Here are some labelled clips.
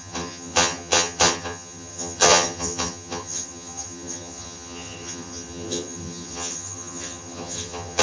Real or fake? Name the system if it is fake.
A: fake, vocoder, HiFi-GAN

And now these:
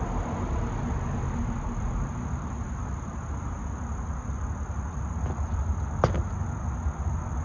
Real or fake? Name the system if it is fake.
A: real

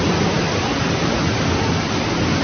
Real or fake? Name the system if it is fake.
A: real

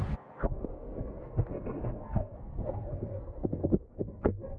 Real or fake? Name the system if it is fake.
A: fake, codec, SNAC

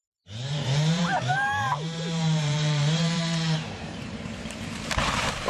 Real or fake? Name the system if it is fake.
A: fake, vocoder, BigVGAN v2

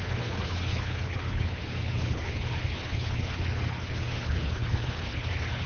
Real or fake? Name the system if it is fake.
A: fake, codec, HILCodec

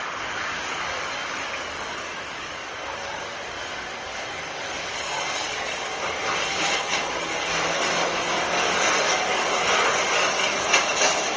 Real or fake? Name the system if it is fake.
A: fake, codec, DAC